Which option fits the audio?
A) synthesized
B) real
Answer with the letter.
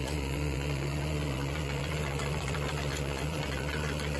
A